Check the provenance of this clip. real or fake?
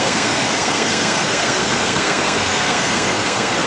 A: fake